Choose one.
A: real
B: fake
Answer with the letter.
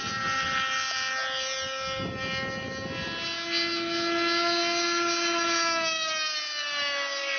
A